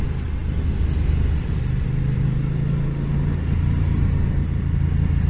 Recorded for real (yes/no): yes